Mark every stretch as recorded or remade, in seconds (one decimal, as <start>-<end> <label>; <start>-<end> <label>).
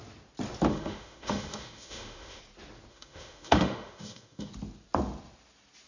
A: 0.0-0.7 recorded; 0.7-2.4 remade; 2.4-2.9 recorded; 2.9-4.5 remade; 4.5-5.9 recorded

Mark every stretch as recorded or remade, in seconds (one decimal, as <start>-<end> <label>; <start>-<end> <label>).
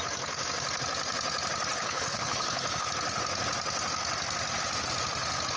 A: 0.0-1.7 recorded; 1.7-2.9 remade; 2.9-5.6 recorded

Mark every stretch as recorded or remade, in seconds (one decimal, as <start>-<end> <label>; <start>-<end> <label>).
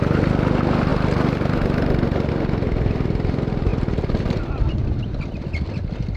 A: 0.0-6.2 recorded